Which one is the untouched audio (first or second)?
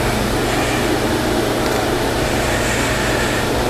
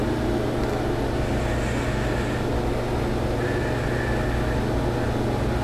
second